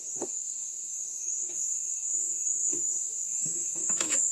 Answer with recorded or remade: remade